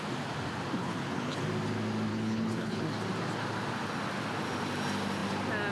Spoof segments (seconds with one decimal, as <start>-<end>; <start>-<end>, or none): 0.8-1.4; 2.1-2.8